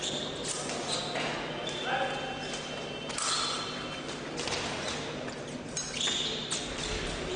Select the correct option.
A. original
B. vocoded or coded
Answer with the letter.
A